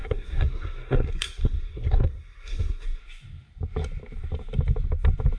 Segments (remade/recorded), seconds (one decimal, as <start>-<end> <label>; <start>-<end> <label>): 0.0-3.0 remade; 3.0-5.4 recorded